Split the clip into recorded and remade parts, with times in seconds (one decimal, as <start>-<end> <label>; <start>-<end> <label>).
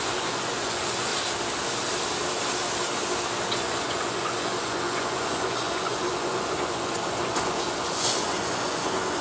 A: 0.0-1.1 remade; 1.1-3.5 recorded; 3.5-9.2 remade